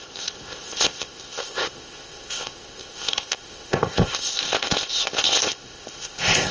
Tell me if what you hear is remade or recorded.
remade